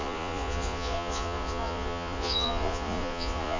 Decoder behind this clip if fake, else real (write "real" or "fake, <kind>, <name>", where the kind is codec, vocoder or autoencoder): fake, vocoder, Vocos